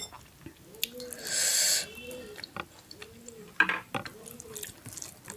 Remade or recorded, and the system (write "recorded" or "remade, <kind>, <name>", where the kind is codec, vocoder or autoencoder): recorded